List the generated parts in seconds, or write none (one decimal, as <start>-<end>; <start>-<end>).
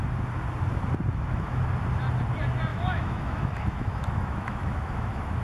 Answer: 1.1-1.6; 2.7-5.4